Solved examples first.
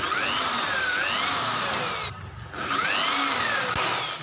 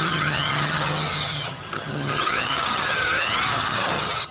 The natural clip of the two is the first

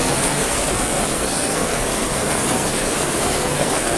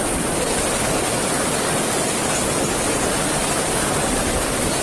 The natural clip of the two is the second